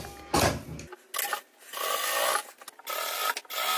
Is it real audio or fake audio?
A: real